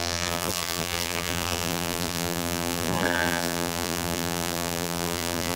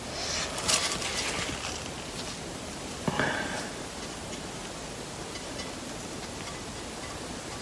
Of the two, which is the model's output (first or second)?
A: first